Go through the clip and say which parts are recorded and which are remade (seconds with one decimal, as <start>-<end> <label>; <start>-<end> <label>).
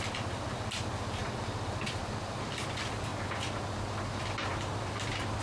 0.0-3.1 remade; 3.1-4.2 recorded; 4.2-5.4 remade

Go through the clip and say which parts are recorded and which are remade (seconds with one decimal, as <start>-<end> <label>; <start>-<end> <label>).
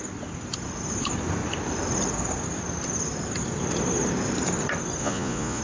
0.0-5.0 recorded; 5.0-5.6 remade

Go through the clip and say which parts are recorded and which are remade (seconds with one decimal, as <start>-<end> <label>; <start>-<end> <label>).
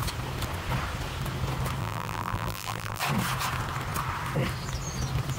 0.0-1.8 recorded; 1.8-3.0 remade; 3.0-5.4 recorded